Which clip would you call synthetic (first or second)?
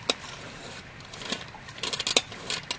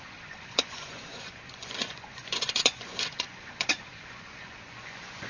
second